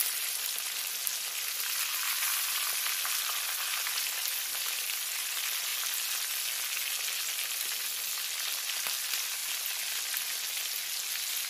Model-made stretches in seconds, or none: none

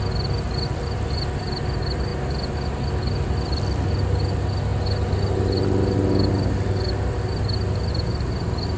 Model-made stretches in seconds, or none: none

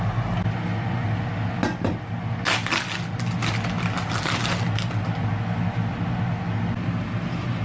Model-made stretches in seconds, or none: none